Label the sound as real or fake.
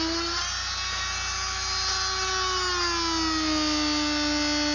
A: real